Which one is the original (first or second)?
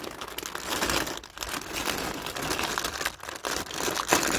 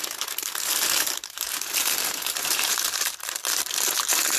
first